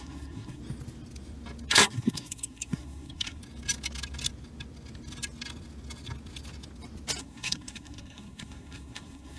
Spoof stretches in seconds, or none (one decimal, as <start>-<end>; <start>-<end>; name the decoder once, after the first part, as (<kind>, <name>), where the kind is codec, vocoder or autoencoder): 0.0-0.6 (codec, SNAC); 1.7-3.4; 7.2-9.4